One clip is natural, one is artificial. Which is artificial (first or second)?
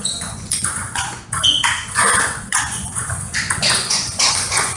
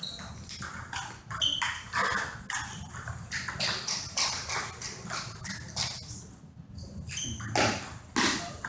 first